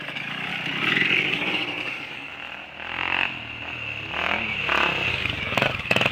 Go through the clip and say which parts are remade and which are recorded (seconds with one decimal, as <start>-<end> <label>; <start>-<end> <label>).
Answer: 0.0-0.5 remade; 0.5-1.3 recorded; 1.3-2.3 remade; 2.3-5.1 recorded; 5.1-6.1 remade